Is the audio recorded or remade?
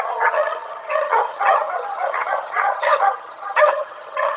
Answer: remade